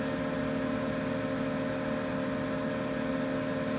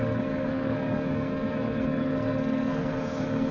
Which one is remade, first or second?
second